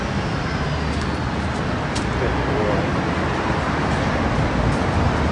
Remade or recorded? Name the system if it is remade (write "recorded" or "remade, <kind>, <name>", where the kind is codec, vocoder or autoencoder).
recorded